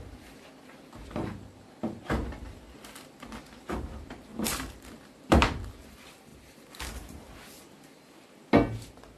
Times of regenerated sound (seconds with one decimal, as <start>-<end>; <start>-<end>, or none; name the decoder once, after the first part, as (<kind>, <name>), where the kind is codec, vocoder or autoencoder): 4.3-5.7 (vocoder, BigVGAN v2); 6.3-7.6